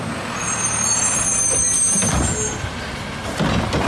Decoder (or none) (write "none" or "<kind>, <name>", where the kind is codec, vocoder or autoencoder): none